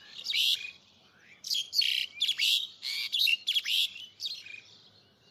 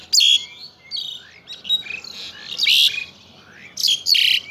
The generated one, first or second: first